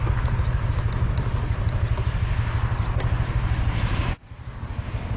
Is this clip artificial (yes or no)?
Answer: no